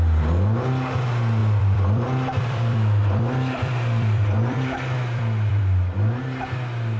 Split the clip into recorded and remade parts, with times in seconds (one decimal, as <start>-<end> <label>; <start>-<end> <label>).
0.0-1.4 recorded; 1.4-5.6 remade; 5.6-7.0 recorded